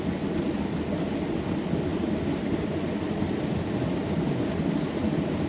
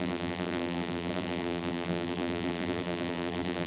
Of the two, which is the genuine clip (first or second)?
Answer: first